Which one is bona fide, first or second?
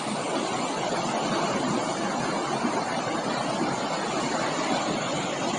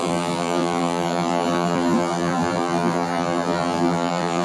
first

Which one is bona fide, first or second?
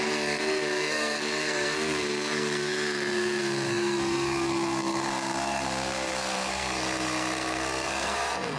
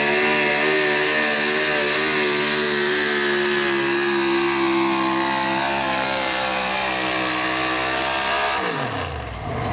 second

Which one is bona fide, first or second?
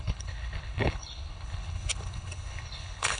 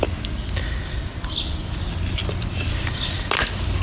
second